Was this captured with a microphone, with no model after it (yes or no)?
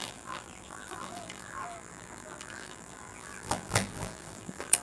no